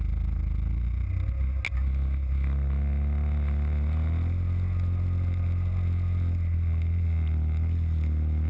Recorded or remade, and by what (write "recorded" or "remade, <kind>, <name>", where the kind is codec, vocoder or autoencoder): recorded